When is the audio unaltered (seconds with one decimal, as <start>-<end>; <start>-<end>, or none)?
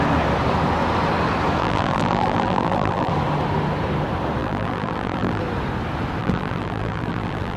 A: 0.0-1.6; 3.1-4.4; 5.4-6.2